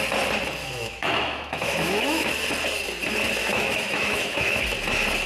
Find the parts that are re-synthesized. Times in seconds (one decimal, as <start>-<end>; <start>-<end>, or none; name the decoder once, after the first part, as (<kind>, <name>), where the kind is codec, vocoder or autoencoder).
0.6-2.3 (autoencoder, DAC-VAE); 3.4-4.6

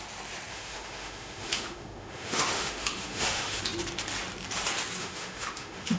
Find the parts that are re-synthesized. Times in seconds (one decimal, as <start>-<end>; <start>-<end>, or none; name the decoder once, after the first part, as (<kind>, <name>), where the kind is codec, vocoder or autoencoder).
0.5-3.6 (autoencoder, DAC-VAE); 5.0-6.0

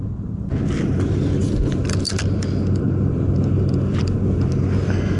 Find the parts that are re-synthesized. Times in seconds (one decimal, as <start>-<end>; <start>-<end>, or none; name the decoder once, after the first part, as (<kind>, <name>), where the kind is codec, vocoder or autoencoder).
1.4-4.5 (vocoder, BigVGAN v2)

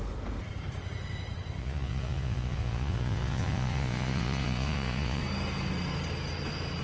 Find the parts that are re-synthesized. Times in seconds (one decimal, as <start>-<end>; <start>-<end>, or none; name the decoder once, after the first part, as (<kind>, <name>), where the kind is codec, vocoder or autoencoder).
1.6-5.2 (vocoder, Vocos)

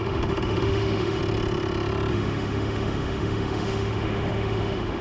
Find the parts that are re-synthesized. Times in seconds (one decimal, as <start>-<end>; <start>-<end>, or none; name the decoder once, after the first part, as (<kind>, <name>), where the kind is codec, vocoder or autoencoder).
0.0-1.2 (autoencoder, DAC-VAE); 2.1-5.0

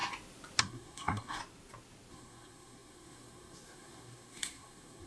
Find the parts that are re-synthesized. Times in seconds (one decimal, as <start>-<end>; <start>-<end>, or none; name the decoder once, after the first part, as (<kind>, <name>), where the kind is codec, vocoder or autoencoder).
0.6-1.4 (codec, SNAC); 2.1-5.1